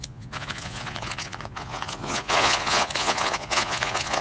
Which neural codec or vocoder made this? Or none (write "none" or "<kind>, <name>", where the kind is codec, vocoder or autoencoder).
vocoder, Vocos